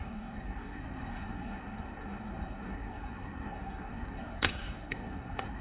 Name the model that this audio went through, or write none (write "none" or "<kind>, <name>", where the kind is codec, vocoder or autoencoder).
codec, SNAC